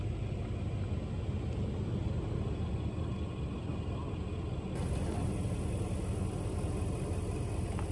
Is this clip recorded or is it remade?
recorded